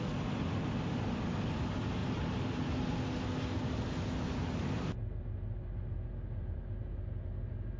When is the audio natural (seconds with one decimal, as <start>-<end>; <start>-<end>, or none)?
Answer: 0.0-7.8